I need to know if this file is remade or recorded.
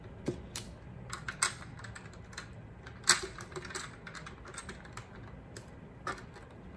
recorded